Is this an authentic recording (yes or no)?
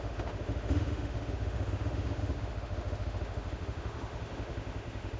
no